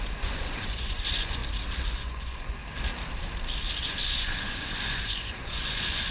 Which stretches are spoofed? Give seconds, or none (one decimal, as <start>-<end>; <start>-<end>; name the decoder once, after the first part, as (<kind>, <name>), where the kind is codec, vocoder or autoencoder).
0.0-1.4 (vocoder, Vocos); 2.0-2.6; 3.8-6.1